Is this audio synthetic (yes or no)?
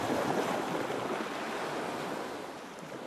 no